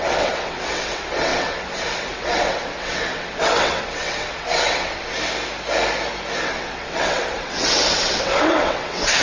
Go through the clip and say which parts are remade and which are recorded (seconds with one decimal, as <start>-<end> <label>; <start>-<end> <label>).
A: 0.0-5.1 remade; 5.1-6.4 recorded; 6.4-9.2 remade